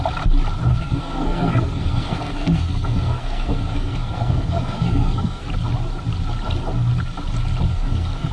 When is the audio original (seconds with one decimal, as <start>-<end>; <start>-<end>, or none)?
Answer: 0.0-0.7; 5.5-7.7